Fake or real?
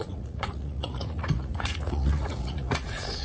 fake